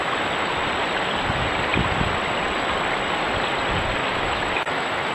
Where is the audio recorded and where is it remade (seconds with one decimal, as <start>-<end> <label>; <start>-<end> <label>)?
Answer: 0.0-4.0 recorded; 4.0-5.1 remade